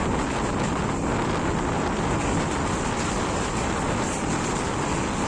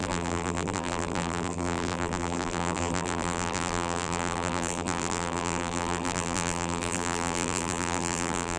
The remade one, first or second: second